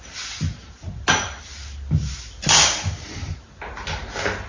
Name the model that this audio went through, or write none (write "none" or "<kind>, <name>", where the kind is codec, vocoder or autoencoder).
none